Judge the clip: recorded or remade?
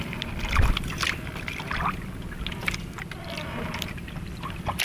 recorded